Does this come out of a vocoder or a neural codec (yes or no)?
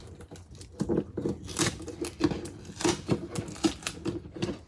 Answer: no